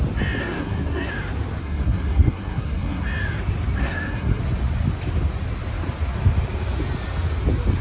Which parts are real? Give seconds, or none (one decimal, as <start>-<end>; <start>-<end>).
0.0-0.4; 1.1-1.6; 3.0-3.8; 4.4-7.8